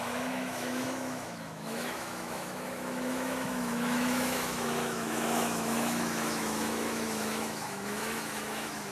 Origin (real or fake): fake